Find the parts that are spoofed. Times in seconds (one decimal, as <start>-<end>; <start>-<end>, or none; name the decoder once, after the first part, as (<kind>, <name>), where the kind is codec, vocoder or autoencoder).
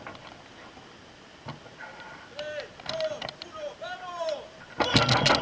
1.7-4.9 (vocoder, BigVGAN v2)